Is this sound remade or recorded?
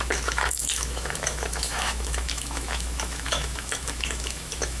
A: remade